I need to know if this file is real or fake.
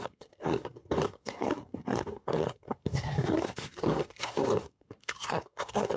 fake